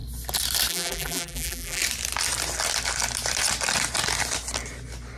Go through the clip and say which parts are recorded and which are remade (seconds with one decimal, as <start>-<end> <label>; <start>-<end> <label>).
0.0-0.7 recorded; 0.7-1.8 remade; 1.8-5.2 recorded